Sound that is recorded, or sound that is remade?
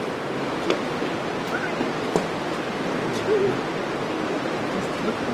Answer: recorded